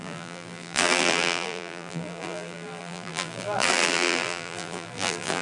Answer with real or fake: fake